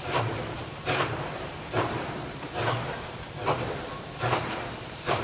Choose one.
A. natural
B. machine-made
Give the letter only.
B